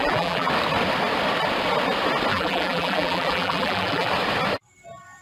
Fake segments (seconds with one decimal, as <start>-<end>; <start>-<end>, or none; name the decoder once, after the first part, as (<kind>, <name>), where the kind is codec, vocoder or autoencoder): 0.0-0.5 (vocoder, BigVGAN v2); 2.3-4.1